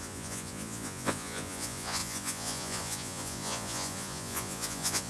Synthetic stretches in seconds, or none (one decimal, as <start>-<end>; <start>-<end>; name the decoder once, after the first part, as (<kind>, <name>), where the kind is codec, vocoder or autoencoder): 0.0-5.1 (vocoder, Vocos)